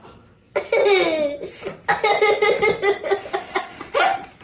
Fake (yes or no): no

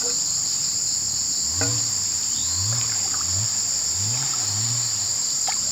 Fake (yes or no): yes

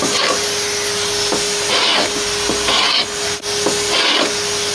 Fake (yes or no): no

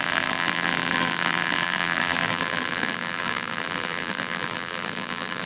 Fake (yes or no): yes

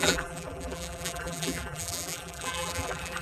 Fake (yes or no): yes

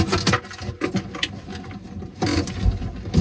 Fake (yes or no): no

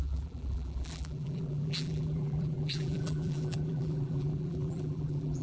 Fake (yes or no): yes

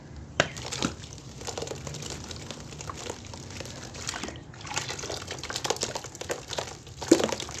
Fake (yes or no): yes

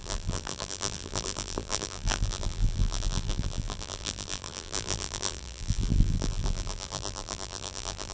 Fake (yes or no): yes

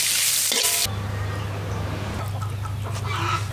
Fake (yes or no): no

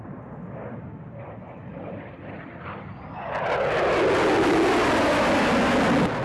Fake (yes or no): no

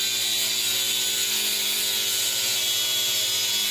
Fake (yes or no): no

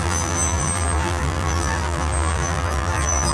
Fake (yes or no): yes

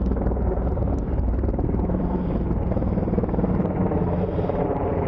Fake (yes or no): yes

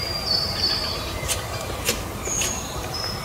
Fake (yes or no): yes